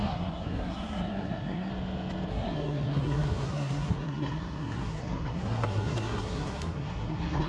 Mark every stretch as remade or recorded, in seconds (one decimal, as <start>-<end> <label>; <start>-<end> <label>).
0.0-1.7 remade; 1.7-2.3 recorded; 2.3-7.5 remade